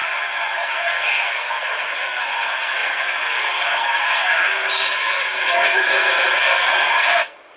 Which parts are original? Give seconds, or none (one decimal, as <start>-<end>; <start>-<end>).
none